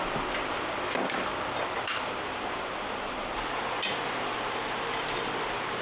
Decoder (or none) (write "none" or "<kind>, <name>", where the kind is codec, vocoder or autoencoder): none